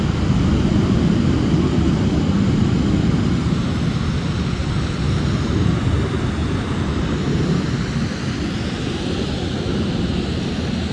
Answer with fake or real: real